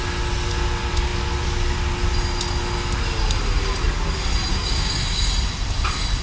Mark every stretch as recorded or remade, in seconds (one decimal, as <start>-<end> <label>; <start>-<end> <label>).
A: 0.0-4.5 recorded; 4.5-5.3 remade; 5.3-6.2 recorded

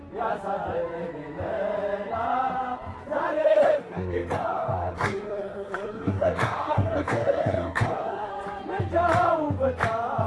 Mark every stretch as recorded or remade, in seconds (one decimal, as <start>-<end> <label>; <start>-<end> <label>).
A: 0.0-3.4 recorded; 3.4-8.3 remade; 8.3-10.3 recorded

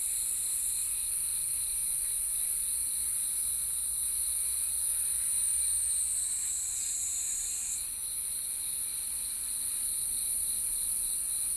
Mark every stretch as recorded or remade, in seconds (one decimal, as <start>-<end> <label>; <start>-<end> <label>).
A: 0.0-11.6 recorded

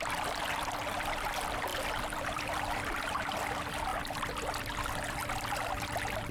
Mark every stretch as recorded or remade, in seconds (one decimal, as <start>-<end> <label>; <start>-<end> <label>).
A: 0.0-5.2 remade; 5.2-6.3 recorded

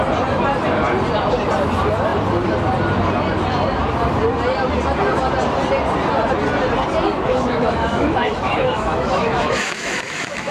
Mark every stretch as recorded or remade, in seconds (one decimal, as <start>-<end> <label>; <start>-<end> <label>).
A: 0.0-7.3 recorded; 7.3-10.5 remade